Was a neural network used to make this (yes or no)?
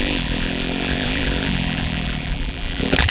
yes